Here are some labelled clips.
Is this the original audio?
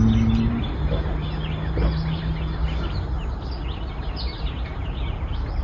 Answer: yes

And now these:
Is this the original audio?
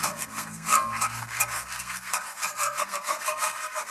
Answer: no